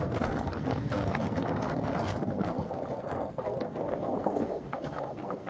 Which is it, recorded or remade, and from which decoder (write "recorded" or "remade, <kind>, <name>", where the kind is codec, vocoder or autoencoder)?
remade, codec, SNAC